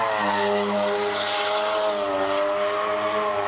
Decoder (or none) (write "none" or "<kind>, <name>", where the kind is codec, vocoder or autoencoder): none